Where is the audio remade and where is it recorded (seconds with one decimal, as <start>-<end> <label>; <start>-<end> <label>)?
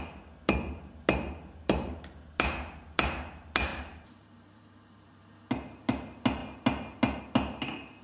0.0-1.6 recorded; 1.6-2.3 remade; 2.3-3.7 recorded; 3.7-5.2 remade; 5.2-8.0 recorded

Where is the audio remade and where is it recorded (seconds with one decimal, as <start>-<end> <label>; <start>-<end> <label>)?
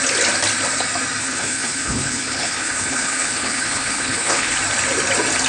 0.0-1.2 recorded; 1.2-4.5 remade; 4.5-5.5 recorded